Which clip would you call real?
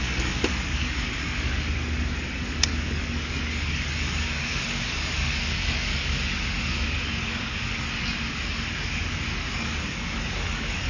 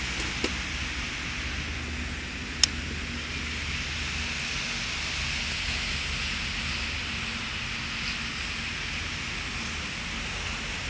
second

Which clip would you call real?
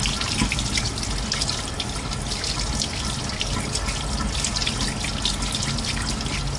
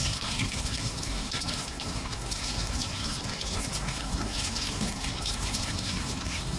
first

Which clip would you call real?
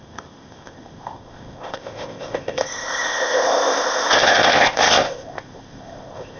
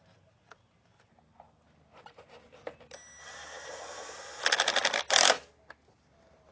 second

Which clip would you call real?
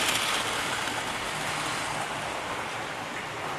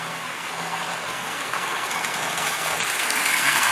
first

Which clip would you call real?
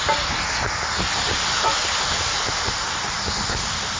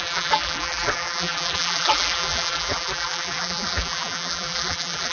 first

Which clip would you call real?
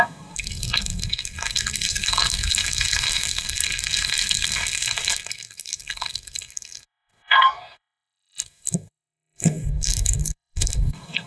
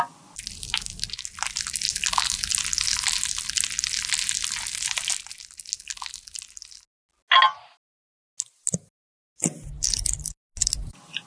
second